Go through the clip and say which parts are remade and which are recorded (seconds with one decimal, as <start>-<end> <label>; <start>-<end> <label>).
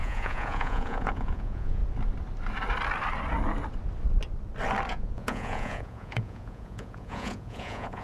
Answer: 0.0-1.8 remade; 1.8-4.9 recorded; 4.9-8.0 remade